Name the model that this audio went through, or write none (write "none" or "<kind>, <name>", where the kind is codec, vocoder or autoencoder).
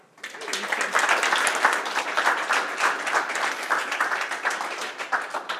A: none